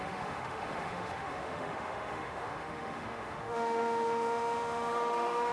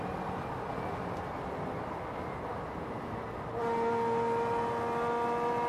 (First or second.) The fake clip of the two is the first